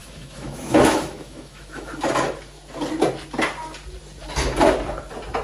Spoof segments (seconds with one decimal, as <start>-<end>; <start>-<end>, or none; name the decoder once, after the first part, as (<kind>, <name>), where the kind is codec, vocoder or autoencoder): 0.0-1.9 (autoencoder, DAC-VAE)